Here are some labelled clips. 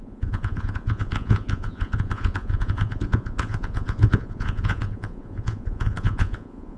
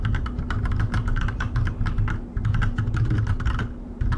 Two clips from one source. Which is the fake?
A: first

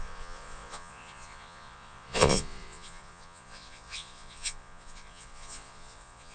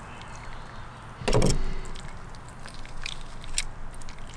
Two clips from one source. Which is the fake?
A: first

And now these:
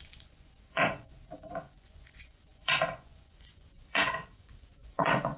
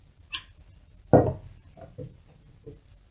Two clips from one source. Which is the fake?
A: first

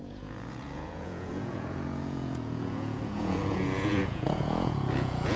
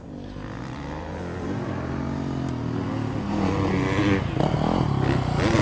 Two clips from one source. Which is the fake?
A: first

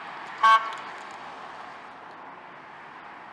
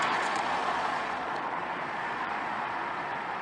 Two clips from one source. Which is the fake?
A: second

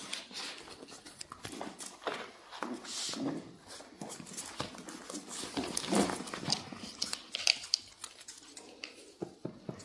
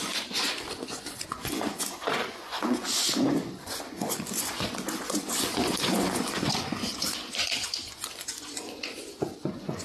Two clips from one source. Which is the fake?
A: second